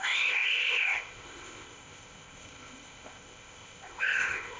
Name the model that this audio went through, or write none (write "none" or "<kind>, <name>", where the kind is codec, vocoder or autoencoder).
codec, ZipCodec